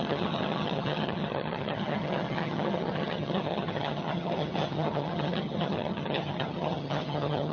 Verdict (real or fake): fake